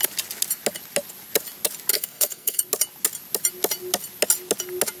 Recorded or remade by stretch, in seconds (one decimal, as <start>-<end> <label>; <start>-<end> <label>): 0.0-1.9 recorded; 1.9-2.6 remade; 2.6-5.0 recorded